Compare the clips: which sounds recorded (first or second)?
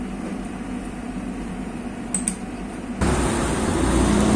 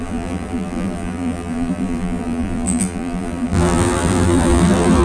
first